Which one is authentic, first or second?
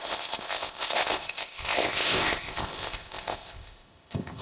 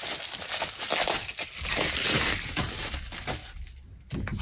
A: second